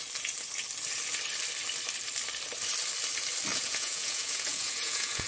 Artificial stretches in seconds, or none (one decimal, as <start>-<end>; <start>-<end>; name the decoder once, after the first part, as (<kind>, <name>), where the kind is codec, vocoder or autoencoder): 3.5-5.3 (vocoder, Vocos)